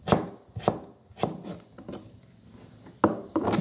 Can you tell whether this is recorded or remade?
recorded